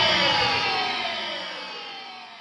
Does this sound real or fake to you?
fake